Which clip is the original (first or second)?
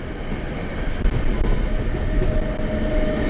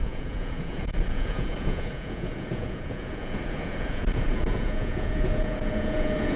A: first